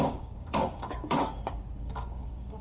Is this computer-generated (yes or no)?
yes